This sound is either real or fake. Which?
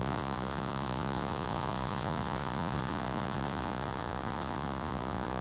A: fake